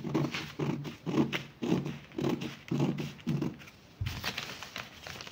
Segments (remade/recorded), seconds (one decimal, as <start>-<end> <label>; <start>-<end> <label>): 0.0-5.3 recorded